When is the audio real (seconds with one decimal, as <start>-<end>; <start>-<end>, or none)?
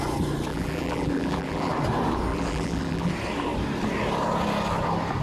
0.0-0.5; 1.7-2.3; 3.1-5.2